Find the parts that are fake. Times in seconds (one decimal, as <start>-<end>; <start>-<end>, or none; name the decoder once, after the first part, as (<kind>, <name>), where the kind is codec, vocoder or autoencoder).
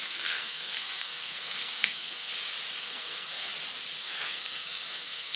0.0-2.3 (codec, SNAC); 2.8-3.5; 4.0-5.4